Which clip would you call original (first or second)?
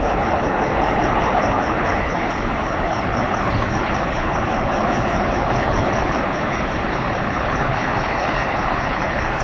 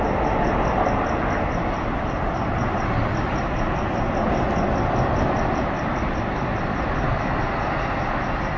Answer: second